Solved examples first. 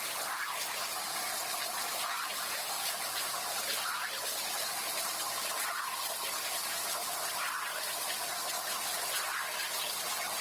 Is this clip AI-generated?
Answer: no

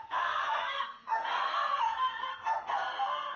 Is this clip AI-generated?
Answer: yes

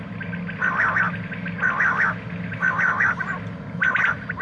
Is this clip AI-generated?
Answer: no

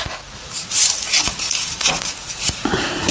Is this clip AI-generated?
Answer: yes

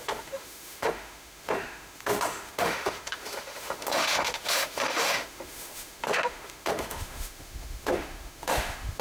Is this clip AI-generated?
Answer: yes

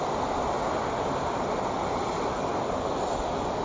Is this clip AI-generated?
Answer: no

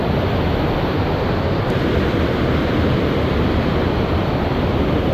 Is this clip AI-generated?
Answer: yes